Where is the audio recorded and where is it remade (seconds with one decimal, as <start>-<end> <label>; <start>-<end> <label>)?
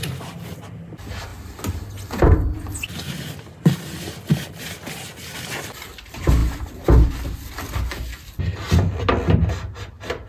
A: 0.0-10.3 recorded